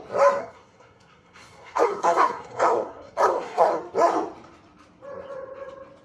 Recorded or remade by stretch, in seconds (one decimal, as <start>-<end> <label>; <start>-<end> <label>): 0.0-0.4 recorded; 0.4-3.8 remade; 3.8-6.0 recorded